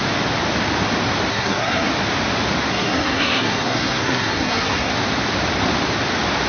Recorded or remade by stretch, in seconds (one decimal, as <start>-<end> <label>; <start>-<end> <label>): 0.0-1.3 recorded; 1.3-1.9 remade; 1.9-2.7 recorded; 2.7-4.9 remade; 4.9-6.5 recorded

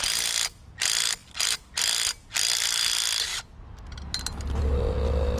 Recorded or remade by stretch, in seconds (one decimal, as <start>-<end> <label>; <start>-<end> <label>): 0.0-5.4 recorded

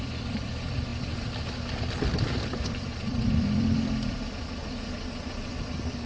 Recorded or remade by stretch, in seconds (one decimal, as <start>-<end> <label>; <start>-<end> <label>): 0.0-0.9 remade; 0.9-2.7 recorded; 2.7-6.1 remade

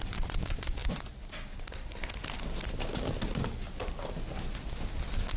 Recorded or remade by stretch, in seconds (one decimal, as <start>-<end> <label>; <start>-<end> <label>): 0.0-5.4 recorded

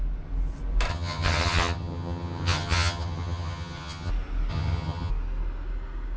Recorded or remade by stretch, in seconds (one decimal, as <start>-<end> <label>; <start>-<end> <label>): 0.0-0.9 recorded; 0.9-4.1 remade; 4.1-4.5 recorded; 4.5-5.1 remade; 5.1-6.2 recorded